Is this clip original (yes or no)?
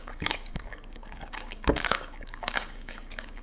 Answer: no